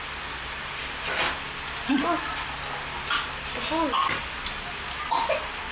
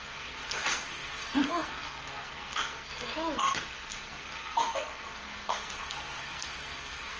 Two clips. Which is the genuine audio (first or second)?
first